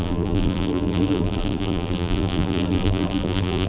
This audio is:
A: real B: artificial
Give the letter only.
B